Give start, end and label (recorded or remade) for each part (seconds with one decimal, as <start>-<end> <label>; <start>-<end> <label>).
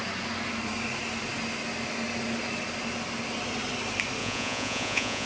0.0-4.2 recorded; 4.2-5.3 remade